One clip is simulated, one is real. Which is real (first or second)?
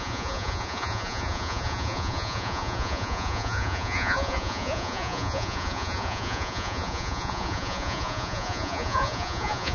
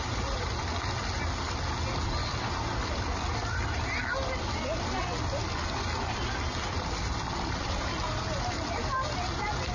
second